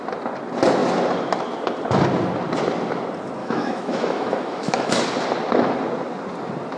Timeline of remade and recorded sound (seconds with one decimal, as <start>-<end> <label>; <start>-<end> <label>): 0.0-3.4 recorded; 3.4-5.0 remade; 5.0-6.8 recorded